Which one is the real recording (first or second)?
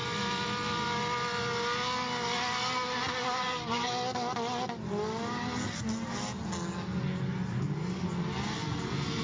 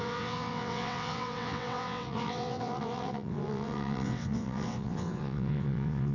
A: first